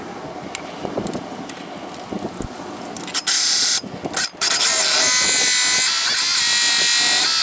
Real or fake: real